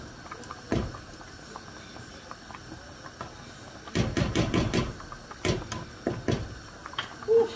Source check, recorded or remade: recorded